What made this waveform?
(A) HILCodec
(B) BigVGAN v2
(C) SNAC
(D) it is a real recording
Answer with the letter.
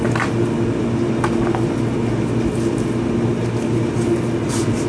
D